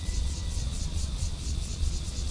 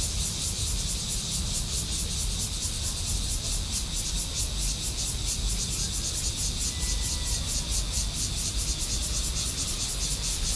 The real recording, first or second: second